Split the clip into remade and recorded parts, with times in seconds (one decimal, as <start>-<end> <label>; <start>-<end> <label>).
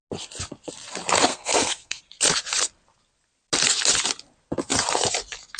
0.0-1.3 recorded; 1.3-2.0 remade; 2.0-5.6 recorded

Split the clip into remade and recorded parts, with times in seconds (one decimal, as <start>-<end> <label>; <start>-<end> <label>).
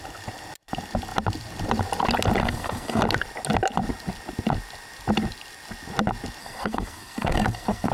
0.0-2.4 recorded; 2.4-3.0 remade; 3.0-6.4 recorded; 6.4-7.9 remade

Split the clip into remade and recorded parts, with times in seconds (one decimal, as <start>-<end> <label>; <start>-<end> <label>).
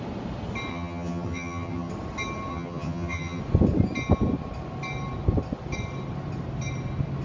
0.0-0.7 recorded; 0.7-1.9 remade; 1.9-2.5 recorded; 2.5-3.4 remade; 3.4-7.2 recorded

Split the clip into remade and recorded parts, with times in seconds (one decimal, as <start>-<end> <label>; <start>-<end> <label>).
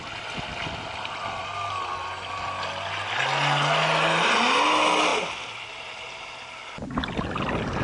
0.0-7.8 recorded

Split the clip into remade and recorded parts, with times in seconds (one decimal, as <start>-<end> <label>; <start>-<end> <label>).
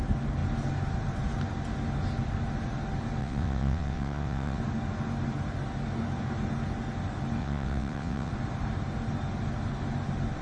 0.0-3.2 recorded; 3.2-4.6 remade; 4.6-7.4 recorded; 7.4-8.3 remade; 8.3-10.4 recorded